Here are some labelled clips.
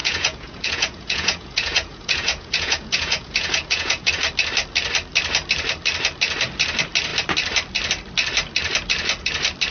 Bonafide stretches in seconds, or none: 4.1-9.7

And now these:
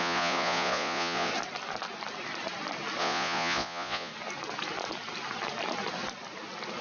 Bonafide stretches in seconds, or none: 1.3-3.0; 4.1-6.8

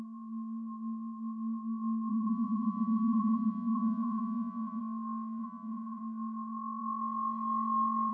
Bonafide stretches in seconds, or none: 0.0-2.1; 4.8-5.4; 6.0-8.1